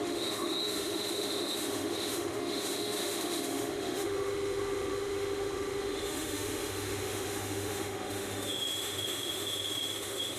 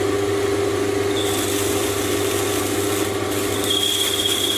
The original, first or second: second